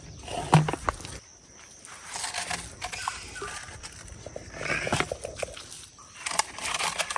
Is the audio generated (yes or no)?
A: no